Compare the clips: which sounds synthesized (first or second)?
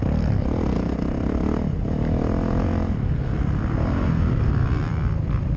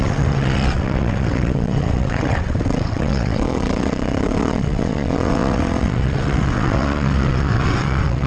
second